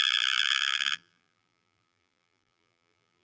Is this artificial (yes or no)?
yes